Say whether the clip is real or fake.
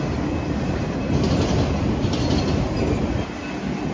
real